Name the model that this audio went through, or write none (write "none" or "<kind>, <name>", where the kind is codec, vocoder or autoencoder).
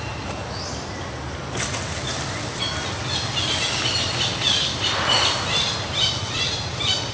none